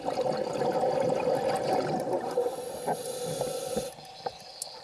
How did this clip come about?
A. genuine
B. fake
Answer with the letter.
A